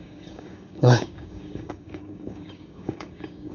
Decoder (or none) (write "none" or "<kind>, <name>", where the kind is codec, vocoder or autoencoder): codec, DAC